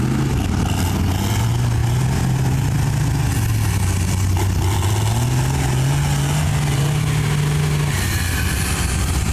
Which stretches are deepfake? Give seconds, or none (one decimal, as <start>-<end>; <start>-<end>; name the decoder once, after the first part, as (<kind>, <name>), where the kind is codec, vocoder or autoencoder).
none

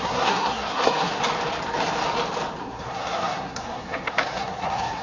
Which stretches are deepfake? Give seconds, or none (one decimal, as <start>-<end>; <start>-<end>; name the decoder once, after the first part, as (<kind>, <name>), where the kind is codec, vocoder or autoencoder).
0.0-1.2 (codec, SNAC); 2.6-5.0

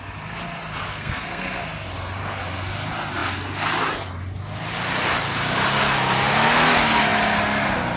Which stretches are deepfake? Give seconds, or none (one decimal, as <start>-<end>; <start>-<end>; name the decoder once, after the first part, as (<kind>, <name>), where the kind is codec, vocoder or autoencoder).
0.9-1.6 (codec, SNAC)

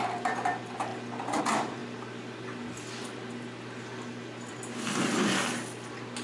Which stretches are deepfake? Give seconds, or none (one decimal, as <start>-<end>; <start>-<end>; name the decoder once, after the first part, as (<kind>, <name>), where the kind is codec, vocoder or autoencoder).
none

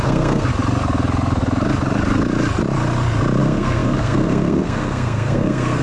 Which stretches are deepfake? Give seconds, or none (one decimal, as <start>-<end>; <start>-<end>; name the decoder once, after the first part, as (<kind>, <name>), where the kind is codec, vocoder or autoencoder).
0.0-0.5 (codec, SNAC); 3.4-5.8

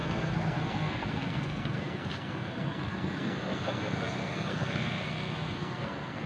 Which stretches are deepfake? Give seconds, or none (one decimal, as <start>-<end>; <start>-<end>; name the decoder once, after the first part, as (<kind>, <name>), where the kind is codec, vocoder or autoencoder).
0.0-6.3 (codec, SNAC)